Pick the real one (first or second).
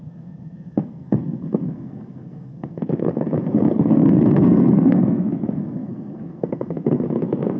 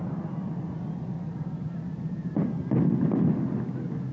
second